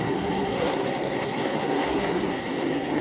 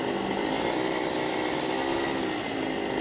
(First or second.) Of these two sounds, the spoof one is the first